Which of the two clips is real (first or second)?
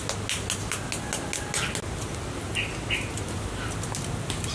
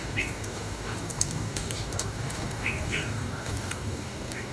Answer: first